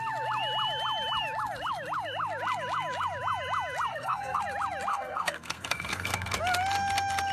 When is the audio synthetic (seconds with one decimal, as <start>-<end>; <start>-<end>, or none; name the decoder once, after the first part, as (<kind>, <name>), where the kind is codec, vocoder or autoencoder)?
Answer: 3.9-4.4 (codec, SNAC); 4.9-6.4